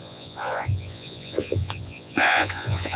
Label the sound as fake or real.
fake